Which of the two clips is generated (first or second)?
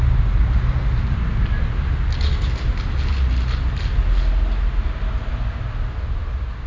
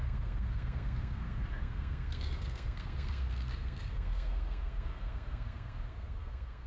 second